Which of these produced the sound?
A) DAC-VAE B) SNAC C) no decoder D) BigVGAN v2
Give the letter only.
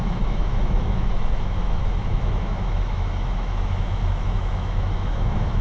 A